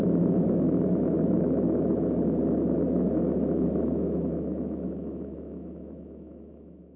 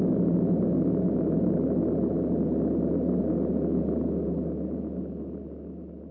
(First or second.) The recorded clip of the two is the second